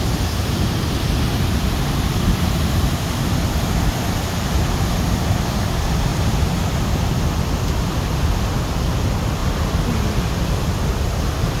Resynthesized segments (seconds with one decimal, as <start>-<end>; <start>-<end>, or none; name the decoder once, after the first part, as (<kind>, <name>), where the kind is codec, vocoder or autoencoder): none